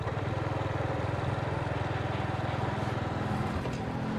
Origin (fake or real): real